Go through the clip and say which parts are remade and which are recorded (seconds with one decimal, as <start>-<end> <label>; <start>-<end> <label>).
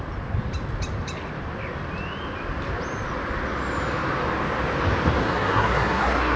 0.0-5.2 recorded; 5.2-6.4 remade